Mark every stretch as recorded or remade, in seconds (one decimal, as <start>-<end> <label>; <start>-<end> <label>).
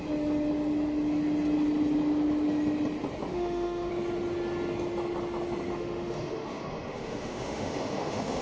0.0-3.3 recorded; 3.3-3.9 remade; 3.9-5.7 recorded; 5.7-8.4 remade